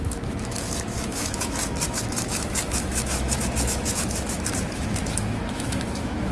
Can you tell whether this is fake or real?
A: fake